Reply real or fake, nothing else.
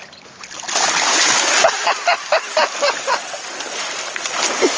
real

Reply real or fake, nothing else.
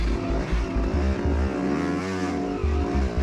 real